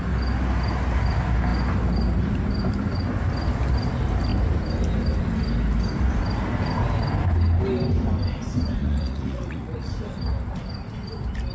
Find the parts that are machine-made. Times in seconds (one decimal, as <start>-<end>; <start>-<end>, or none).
8.8-9.9